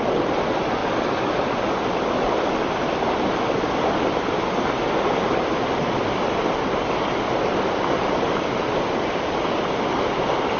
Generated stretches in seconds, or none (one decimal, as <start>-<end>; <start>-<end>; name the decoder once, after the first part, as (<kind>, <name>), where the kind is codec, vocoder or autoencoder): none